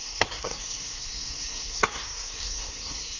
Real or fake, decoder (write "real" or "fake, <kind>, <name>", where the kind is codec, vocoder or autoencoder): fake, codec, SNAC